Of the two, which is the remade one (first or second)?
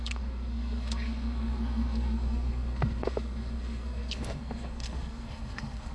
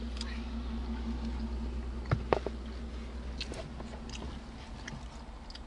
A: first